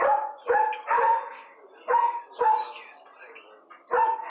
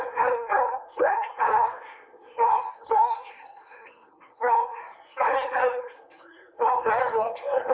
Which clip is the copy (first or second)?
second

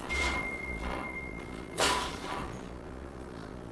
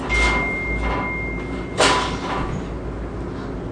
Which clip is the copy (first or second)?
first